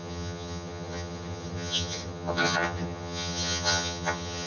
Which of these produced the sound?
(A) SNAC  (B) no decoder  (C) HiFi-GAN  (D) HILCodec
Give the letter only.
C